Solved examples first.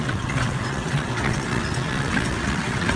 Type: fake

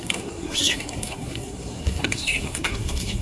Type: fake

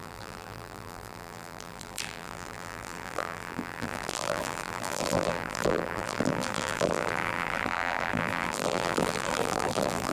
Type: fake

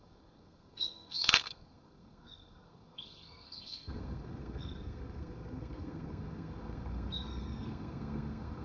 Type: fake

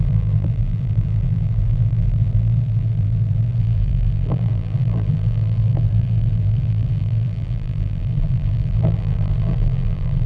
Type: fake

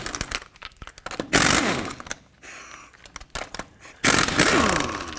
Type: real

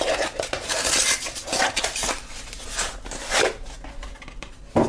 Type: real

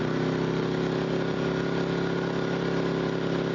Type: real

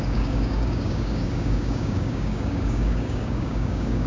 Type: fake